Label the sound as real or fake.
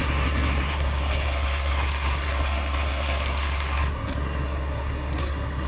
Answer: fake